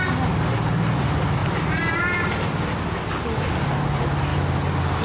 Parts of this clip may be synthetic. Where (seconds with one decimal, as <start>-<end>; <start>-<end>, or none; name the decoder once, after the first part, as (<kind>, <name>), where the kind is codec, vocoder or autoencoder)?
none